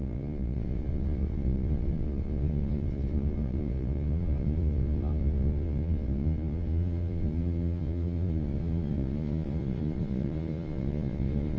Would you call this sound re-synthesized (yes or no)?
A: yes